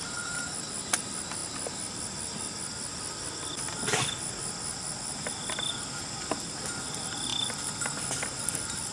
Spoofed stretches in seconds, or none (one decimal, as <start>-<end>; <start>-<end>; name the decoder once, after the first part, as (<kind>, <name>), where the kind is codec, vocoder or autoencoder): none